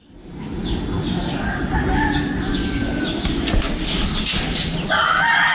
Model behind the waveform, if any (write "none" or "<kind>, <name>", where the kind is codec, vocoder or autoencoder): none